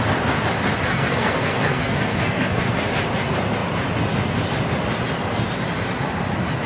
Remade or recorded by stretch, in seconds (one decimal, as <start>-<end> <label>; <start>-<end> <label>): 0.0-0.9 recorded; 0.9-2.8 remade; 2.8-6.7 recorded